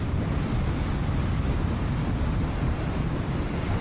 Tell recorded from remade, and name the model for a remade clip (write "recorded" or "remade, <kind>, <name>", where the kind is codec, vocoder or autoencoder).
recorded